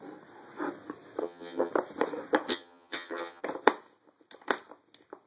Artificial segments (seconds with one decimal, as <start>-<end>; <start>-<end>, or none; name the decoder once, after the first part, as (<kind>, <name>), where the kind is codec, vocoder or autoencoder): 1.2-1.7 (vocoder, HiFi-GAN); 2.5-3.4